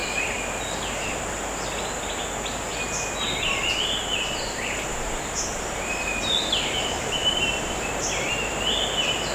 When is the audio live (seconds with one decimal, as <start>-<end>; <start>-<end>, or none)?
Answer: 0.8-7.2; 7.8-9.3